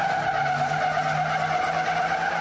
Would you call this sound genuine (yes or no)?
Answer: yes